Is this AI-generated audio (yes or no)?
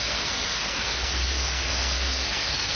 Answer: yes